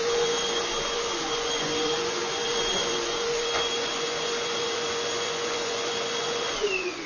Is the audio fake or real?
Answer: fake